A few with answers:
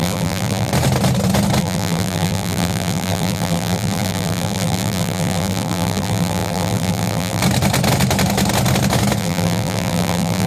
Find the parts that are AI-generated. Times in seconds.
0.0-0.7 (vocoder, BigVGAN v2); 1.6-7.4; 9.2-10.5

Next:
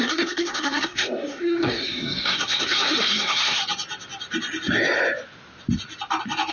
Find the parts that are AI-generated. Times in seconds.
0.0-3.6 (codec, SNAC)

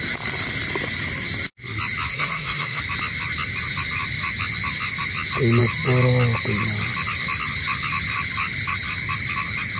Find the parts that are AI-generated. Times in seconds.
2.1-2.8 (codec, SNAC)

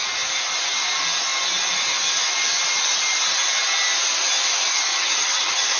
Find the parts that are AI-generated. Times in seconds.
4.9-5.8 (vocoder, HiFi-GAN)

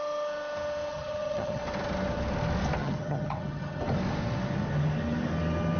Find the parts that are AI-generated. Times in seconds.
0.9-1.6 (vocoder, HiFi-GAN); 2.8-3.8

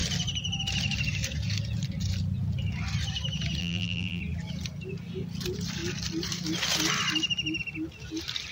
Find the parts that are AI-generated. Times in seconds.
3.6-4.2 (vocoder, BigVGAN v2)